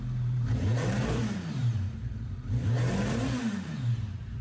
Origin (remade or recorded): remade